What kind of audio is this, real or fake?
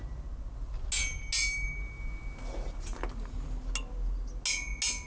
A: real